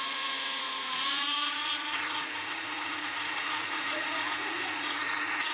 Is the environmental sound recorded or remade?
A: remade